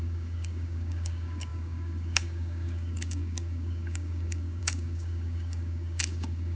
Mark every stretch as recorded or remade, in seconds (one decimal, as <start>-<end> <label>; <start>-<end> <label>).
0.0-6.6 remade